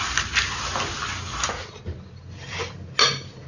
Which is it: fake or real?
real